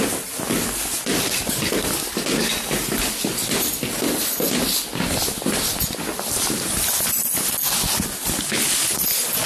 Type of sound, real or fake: real